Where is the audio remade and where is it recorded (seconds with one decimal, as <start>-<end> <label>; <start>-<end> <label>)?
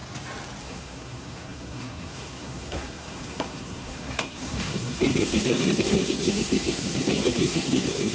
0.0-0.6 recorded; 0.6-8.1 remade